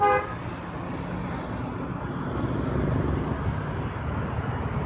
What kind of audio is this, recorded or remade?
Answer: recorded